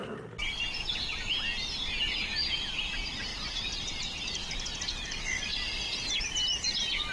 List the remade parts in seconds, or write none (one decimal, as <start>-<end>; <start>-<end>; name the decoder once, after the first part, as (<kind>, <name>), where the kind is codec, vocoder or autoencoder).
0.0-0.6 (vocoder, BigVGAN v2); 3.3-5.7